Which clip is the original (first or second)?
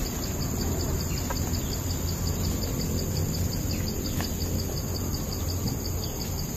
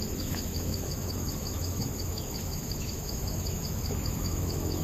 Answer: first